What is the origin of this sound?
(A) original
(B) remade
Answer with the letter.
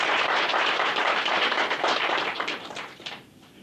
B